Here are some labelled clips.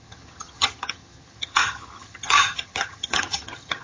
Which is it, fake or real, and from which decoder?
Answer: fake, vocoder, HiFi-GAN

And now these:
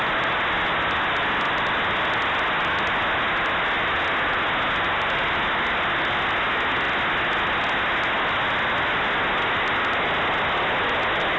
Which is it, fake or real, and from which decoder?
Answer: real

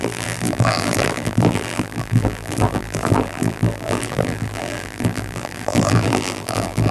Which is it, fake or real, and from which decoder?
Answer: fake, vocoder, BigVGAN v2